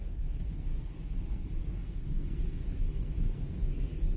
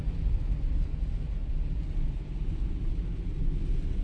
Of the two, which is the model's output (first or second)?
first